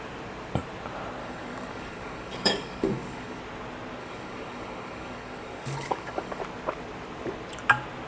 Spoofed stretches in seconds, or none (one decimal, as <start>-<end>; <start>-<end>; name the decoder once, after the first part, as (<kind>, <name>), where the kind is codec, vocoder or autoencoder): 1.2-3.4 (codec, DAC); 4.0-6.4